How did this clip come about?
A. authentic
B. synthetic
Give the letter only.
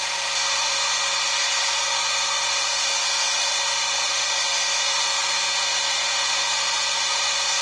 A